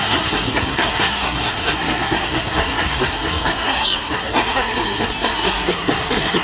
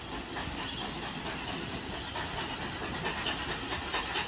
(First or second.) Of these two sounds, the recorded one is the second